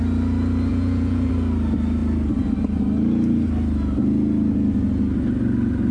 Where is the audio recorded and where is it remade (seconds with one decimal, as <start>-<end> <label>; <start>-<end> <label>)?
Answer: 0.0-0.7 recorded; 0.7-1.3 remade; 1.3-5.9 recorded